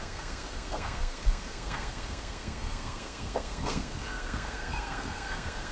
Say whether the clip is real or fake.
fake